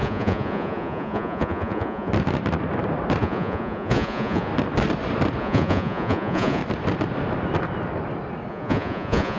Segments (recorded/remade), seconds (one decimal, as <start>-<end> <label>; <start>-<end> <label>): 0.0-2.1 remade; 2.1-3.2 recorded; 3.2-4.5 remade; 4.5-5.4 recorded; 5.4-6.6 remade; 6.6-8.5 recorded; 8.5-9.4 remade